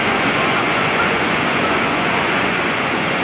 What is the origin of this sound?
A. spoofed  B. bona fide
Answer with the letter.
A